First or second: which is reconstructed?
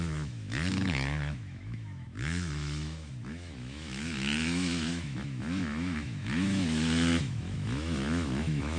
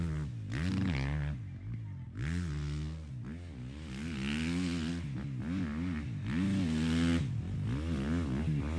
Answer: first